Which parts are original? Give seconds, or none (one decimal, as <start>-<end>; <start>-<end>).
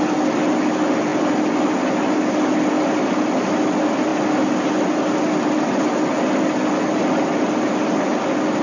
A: 0.0-8.6